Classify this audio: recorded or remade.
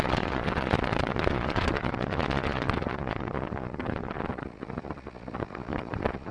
remade